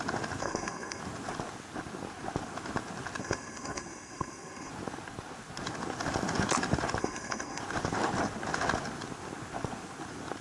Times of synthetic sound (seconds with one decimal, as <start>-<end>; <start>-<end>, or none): 0.4-1.0; 3.2-4.7; 7.0-7.6